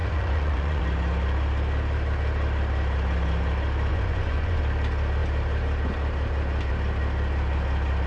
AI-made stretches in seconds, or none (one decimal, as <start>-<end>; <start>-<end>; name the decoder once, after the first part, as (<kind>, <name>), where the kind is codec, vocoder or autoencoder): 0.0-0.8 (vocoder, Vocos); 3.9-4.6